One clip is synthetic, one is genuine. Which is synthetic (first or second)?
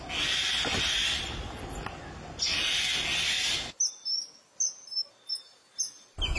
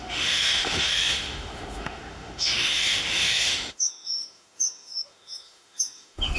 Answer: second